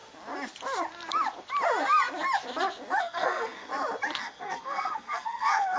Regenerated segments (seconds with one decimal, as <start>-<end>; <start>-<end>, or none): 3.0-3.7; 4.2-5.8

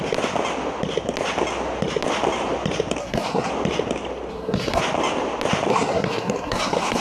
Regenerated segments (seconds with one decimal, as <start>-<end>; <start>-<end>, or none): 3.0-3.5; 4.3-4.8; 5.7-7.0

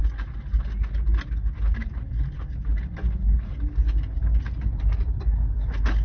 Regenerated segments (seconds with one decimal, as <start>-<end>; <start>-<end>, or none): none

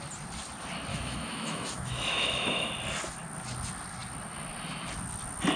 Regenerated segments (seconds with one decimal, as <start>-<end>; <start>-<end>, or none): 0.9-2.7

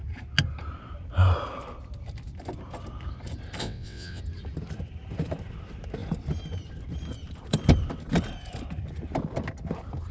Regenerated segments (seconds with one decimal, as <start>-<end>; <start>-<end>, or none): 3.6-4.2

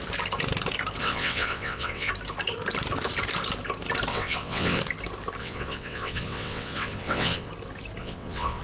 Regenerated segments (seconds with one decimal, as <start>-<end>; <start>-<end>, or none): 1.0-2.1; 4.1-4.8; 5.4-7.5; 8.0-8.6